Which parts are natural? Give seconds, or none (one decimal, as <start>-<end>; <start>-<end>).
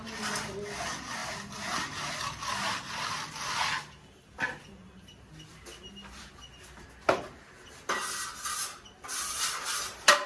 0.0-10.3